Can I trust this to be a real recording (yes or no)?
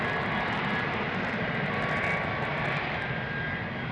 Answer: yes